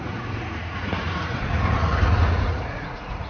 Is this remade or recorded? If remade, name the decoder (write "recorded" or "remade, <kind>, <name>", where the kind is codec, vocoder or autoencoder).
remade, vocoder, Vocos